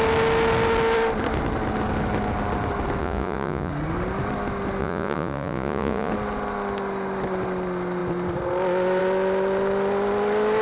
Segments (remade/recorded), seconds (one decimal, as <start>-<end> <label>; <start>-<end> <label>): 0.0-3.0 recorded; 3.0-3.7 remade; 3.7-4.8 recorded; 4.8-6.1 remade; 6.1-10.6 recorded

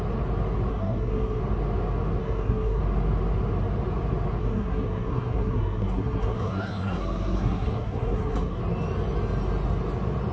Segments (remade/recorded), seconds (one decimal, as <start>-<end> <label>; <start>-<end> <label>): 0.0-0.7 recorded; 0.7-1.4 remade; 1.4-2.2 recorded; 2.2-2.8 remade; 2.8-4.4 recorded; 4.4-8.6 remade; 8.6-10.3 recorded

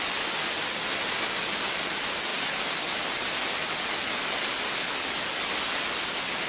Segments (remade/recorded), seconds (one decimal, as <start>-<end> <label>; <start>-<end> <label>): 0.0-6.5 recorded

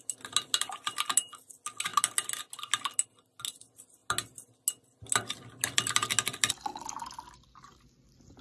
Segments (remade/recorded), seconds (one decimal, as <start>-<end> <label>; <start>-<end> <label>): 0.0-8.4 recorded

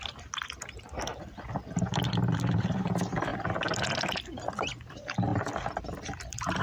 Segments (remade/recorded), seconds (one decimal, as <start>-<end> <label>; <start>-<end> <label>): 0.0-1.1 recorded; 1.1-2.9 remade; 2.9-3.3 recorded; 3.3-4.2 remade; 4.2-5.3 recorded; 5.3-6.6 remade

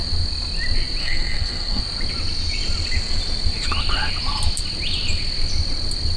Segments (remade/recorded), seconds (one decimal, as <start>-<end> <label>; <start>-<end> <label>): 0.0-1.0 recorded; 1.0-1.8 remade; 1.8-6.2 recorded